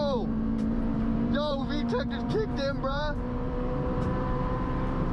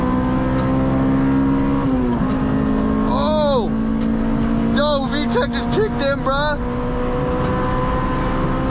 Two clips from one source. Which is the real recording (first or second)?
second